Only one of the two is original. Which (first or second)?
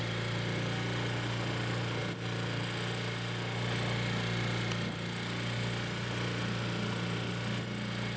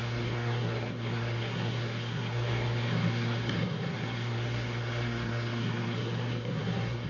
first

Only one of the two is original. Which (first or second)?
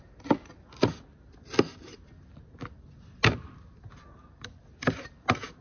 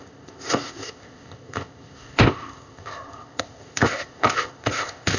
first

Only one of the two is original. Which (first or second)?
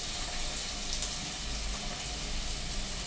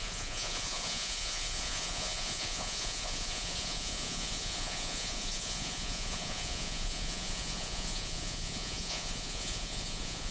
first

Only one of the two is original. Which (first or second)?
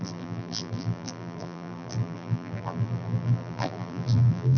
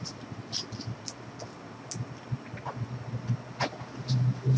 second